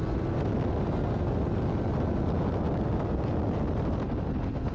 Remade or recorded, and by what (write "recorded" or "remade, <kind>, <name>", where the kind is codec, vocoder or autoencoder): recorded